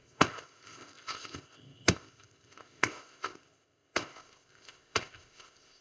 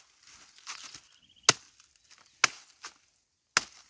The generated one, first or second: first